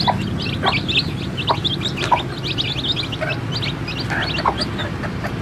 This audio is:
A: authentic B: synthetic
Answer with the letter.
A